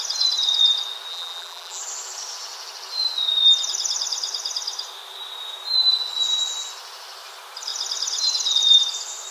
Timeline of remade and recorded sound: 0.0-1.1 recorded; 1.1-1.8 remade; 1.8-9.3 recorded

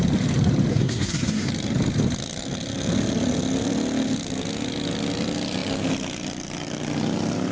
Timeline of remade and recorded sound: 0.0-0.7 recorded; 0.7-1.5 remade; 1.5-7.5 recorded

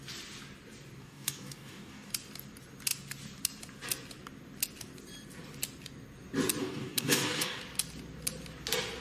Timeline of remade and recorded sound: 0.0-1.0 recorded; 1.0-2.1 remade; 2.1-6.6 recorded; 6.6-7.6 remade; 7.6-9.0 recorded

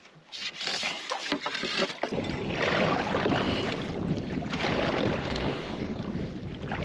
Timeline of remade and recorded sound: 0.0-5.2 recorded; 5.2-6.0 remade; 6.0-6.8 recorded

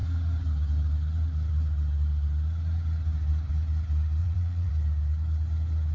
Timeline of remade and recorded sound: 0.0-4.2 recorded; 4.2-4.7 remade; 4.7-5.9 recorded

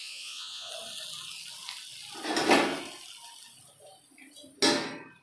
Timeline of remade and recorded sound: 0.0-0.7 remade; 0.7-5.2 recorded

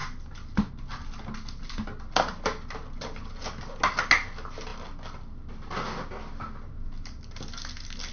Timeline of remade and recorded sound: 0.0-8.1 recorded